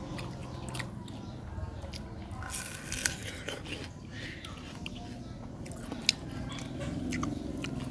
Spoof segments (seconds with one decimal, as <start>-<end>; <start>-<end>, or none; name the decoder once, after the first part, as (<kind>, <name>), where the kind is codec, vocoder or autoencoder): none